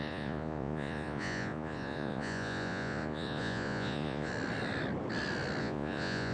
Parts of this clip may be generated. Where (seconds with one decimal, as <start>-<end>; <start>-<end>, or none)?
0.0-4.3; 5.6-6.3